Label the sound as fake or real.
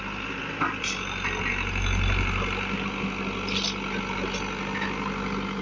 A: real